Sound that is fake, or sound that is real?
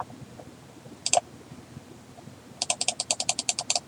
fake